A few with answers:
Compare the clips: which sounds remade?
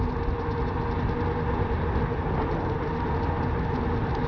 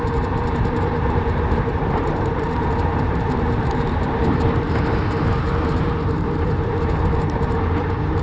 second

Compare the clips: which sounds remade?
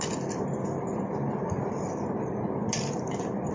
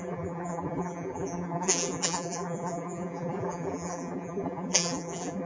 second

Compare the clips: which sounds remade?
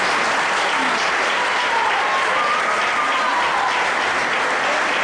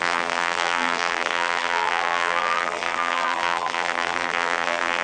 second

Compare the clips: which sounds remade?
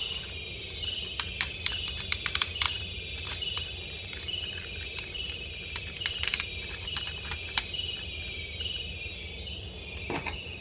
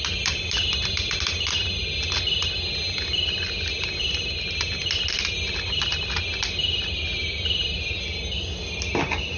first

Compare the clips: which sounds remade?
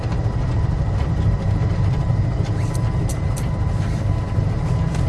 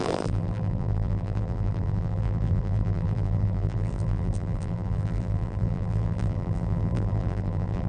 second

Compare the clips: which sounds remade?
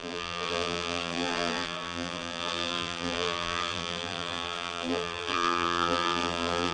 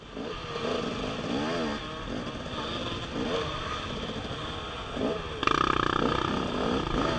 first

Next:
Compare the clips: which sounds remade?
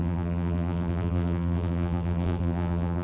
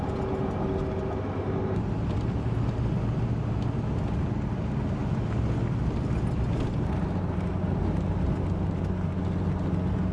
first